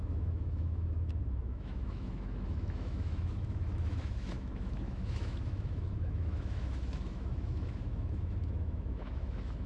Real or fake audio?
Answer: fake